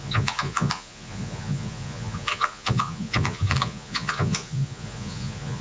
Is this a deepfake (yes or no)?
yes